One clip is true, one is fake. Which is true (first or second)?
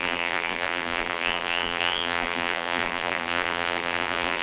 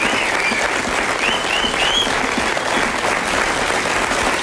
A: second